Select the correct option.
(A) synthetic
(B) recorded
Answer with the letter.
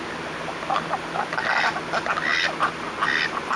B